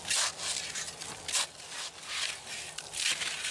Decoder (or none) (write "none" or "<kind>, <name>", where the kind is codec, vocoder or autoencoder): none